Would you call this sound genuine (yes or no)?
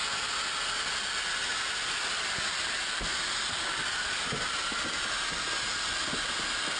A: yes